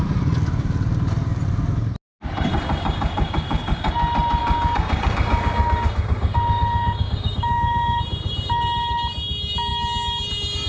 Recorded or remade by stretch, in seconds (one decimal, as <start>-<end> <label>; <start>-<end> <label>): 0.0-2.5 recorded; 2.5-3.9 remade; 3.9-4.4 recorded; 4.4-8.0 remade; 8.0-10.7 recorded